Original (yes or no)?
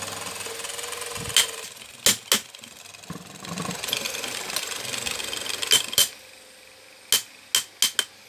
yes